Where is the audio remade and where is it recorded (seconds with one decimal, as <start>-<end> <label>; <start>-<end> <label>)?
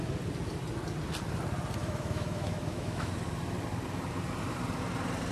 0.0-1.8 recorded; 1.8-3.1 remade; 3.1-5.3 recorded